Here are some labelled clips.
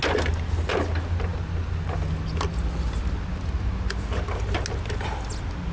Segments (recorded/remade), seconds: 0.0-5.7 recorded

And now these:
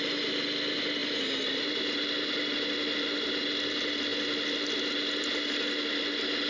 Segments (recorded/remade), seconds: 0.0-6.5 recorded

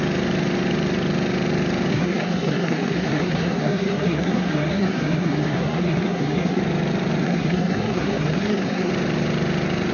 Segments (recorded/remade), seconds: 0.0-1.9 recorded; 1.9-6.6 remade; 6.6-7.2 recorded; 7.2-8.9 remade; 8.9-9.9 recorded

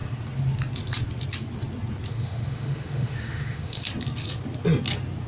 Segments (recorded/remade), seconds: 0.0-2.1 recorded; 2.1-3.8 remade; 3.8-5.3 recorded

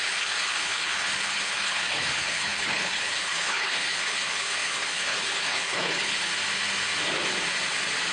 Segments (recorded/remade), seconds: 0.0-6.3 remade; 6.3-8.1 recorded

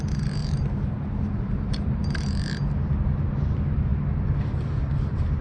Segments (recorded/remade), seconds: 0.0-0.4 recorded; 0.4-2.2 remade; 2.2-5.4 recorded

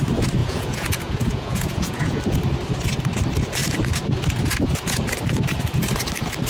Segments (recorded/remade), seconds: 0.0-0.4 recorded; 0.4-2.2 remade; 2.2-6.5 recorded